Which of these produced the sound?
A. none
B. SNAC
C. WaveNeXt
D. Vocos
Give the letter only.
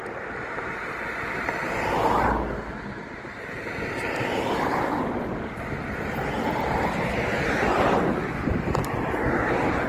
A